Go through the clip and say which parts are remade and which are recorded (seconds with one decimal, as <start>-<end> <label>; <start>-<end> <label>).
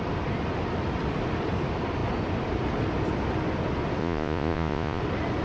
0.0-4.0 recorded; 4.0-5.0 remade; 5.0-5.4 recorded